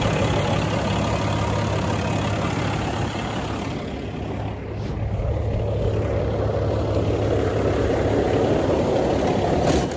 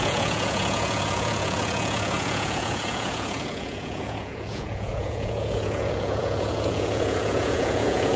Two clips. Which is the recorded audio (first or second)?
first